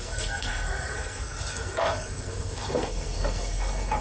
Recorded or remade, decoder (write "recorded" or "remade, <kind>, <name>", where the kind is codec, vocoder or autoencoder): remade, codec, SNAC